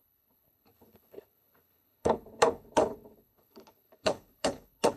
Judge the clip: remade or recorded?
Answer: remade